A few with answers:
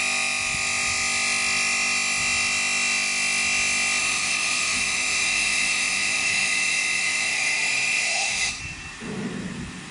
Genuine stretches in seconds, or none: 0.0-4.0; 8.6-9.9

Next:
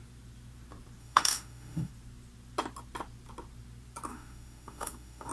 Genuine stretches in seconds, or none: 0.0-1.0; 1.9-4.1

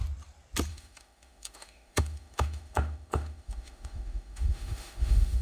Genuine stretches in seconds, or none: 0.0-0.7

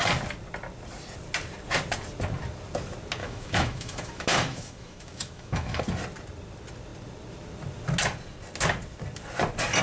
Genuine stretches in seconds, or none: 0.0-3.2; 5.8-9.8

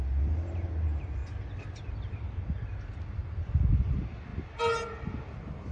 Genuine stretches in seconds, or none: 0.0-5.7

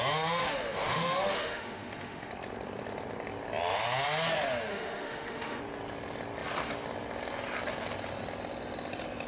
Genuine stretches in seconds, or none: 0.0-0.4; 2.3-4.7; 5.6-9.3

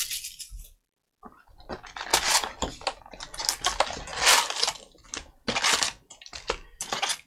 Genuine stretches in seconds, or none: 0.0-7.3